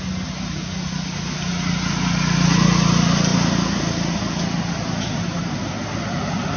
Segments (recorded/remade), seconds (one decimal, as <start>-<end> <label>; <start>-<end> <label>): 0.0-6.6 recorded